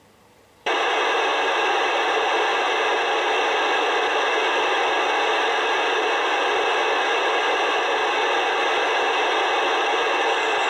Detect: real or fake real